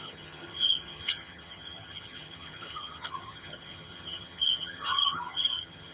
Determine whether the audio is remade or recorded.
remade